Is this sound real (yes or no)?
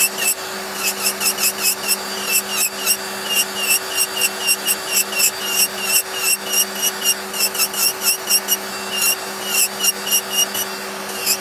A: yes